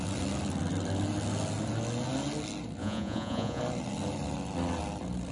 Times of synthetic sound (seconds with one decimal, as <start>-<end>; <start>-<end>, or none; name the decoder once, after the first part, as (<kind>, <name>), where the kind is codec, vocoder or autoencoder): 2.8-3.6 (vocoder, Vocos)